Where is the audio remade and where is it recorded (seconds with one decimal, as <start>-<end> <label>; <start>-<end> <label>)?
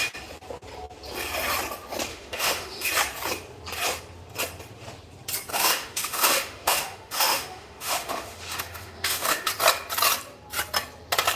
0.0-2.1 recorded; 2.1-2.9 remade; 2.9-5.5 recorded; 5.5-9.5 remade; 9.5-11.4 recorded